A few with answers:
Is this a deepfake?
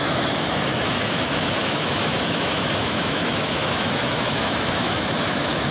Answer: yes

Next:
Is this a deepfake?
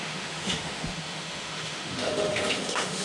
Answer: yes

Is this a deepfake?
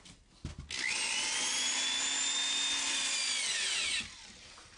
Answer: no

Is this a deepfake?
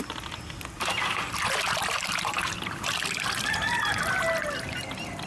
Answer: no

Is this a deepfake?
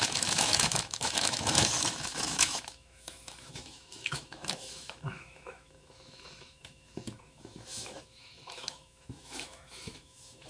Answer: yes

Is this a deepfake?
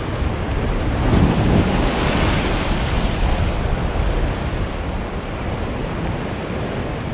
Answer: no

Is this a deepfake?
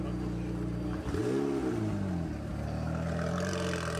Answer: no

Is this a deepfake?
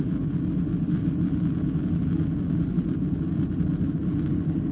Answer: no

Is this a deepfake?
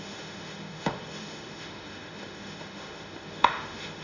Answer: yes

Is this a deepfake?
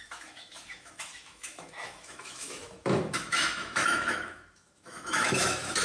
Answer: yes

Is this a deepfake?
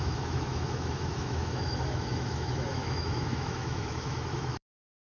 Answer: yes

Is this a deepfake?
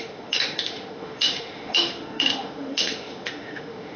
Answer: yes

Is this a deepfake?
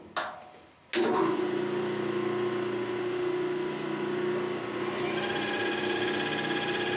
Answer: no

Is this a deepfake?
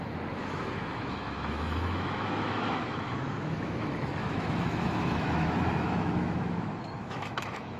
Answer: yes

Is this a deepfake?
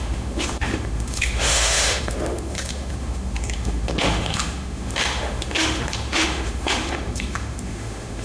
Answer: yes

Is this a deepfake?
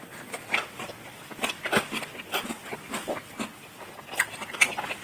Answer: no